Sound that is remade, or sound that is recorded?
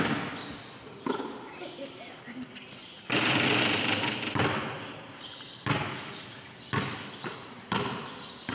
recorded